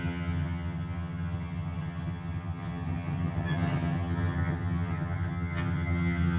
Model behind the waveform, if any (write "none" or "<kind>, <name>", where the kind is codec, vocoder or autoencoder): vocoder, HiFi-GAN